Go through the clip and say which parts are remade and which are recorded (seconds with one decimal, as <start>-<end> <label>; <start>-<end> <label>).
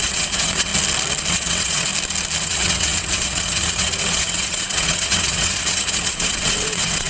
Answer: 0.0-0.7 remade; 0.7-1.3 recorded; 1.3-1.9 remade; 1.9-2.4 recorded; 2.4-7.1 remade